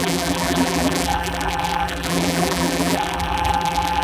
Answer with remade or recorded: remade